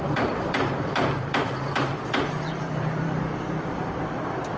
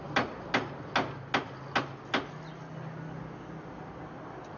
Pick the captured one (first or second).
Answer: second